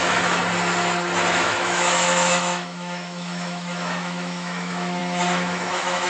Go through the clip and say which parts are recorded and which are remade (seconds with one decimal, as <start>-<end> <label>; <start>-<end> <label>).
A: 0.0-0.4 remade; 0.4-1.3 recorded; 1.3-6.1 remade